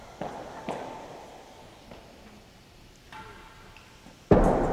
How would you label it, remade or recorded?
recorded